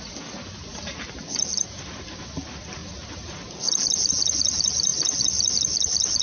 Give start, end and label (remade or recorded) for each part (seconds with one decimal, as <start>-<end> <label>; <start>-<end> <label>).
0.0-6.2 recorded